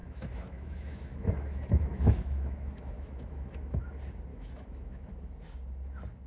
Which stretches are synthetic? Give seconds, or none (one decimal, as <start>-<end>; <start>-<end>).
0.0-3.8; 4.3-5.1